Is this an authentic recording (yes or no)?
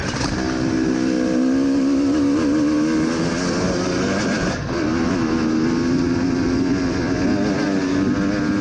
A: yes